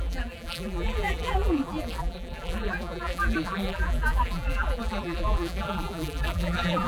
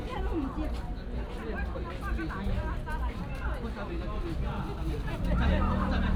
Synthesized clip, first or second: first